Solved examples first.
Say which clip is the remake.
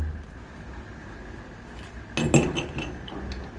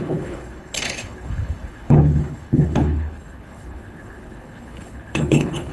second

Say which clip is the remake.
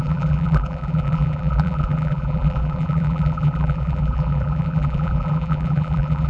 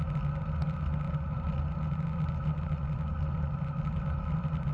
first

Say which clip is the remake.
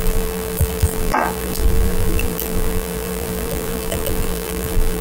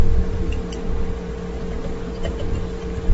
first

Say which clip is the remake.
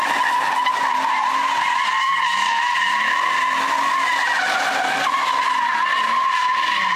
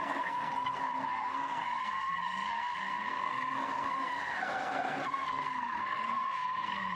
second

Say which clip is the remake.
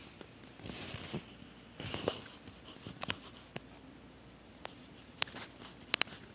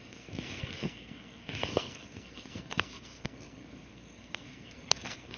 second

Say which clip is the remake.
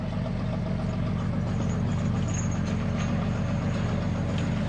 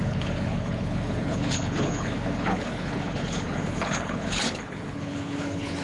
second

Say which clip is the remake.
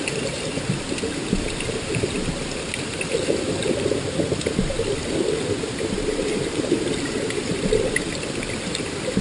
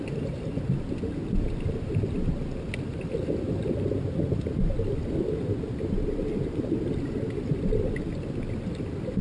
first